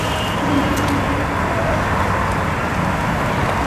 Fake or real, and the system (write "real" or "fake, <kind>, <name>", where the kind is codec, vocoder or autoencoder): real